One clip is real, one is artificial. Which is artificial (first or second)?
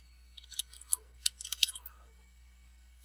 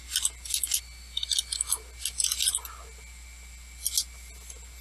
first